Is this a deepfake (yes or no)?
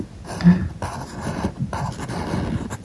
no